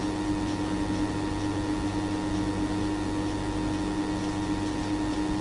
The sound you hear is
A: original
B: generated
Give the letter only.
A